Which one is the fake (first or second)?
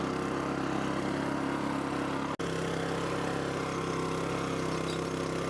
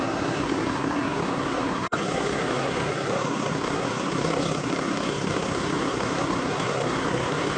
second